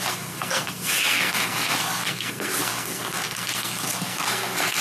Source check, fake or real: fake